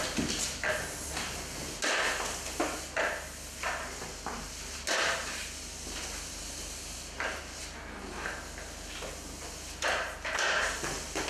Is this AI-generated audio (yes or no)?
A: no